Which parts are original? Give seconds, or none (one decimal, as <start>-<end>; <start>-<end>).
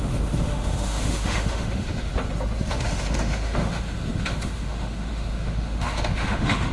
2.1-2.7